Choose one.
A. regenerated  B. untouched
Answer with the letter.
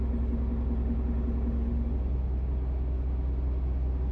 B